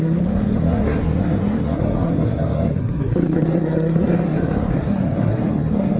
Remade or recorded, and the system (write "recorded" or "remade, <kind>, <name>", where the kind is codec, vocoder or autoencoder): remade, codec, SNAC